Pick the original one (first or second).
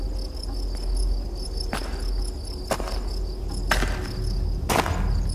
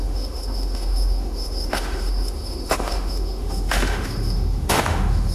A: first